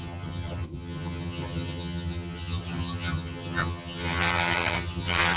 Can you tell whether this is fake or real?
fake